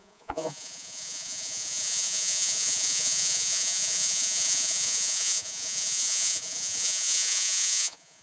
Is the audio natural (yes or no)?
no